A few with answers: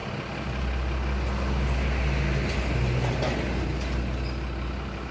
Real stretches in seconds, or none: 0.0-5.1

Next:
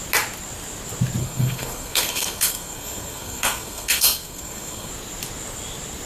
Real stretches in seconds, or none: 0.0-1.2; 4.9-6.1

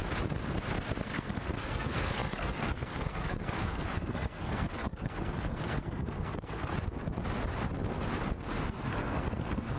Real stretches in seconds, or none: 0.0-1.0; 6.7-8.7

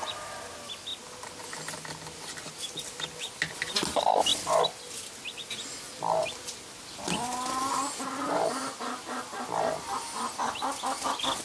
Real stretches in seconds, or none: 0.0-11.4

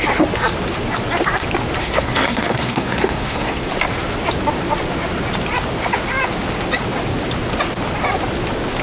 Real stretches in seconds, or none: 0.0-1.8; 3.7-8.8

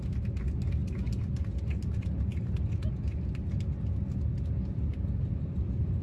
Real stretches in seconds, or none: 0.0-6.0

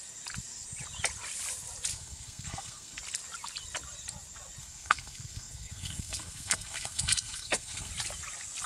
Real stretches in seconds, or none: 0.0-1.9; 3.0-4.6; 7.9-8.7

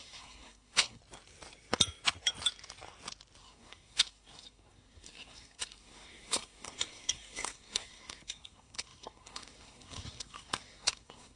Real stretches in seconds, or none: 1.0-3.4